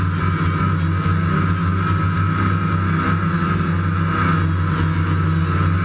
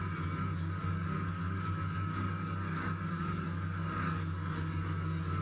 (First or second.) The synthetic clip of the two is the second